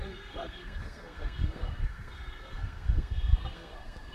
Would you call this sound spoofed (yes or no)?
yes